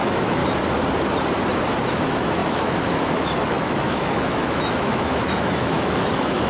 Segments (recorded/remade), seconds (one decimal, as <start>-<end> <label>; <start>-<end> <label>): 0.0-0.4 remade; 0.4-1.9 recorded; 1.9-6.5 remade